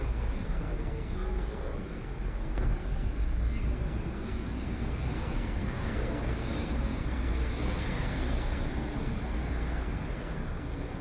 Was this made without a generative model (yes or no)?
no